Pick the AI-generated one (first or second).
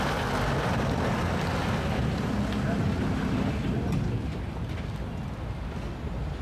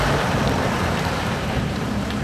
second